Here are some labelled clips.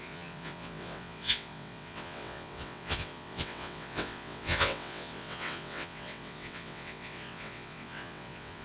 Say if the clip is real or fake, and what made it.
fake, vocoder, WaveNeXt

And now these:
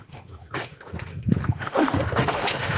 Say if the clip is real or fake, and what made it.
fake, autoencoder, DAC-VAE